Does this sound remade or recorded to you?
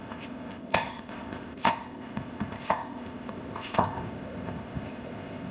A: remade